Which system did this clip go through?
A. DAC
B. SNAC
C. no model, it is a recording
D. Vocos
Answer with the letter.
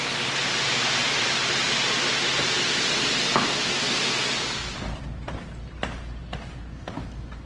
C